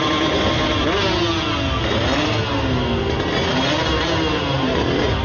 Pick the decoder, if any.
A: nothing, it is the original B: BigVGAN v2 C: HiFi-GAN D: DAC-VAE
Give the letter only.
A